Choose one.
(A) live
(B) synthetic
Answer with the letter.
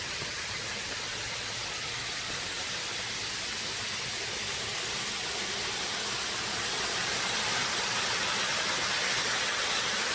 A